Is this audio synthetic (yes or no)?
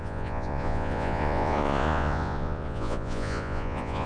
yes